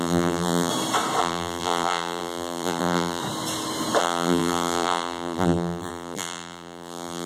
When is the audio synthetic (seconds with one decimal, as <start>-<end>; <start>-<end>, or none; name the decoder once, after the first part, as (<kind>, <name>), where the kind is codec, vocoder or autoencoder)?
0.0-0.7 (vocoder, BigVGAN v2); 1.2-3.2; 4.0-7.3